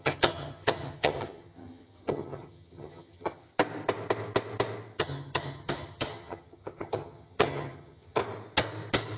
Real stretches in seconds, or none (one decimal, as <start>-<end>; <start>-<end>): 3.5-5.0; 8.2-9.2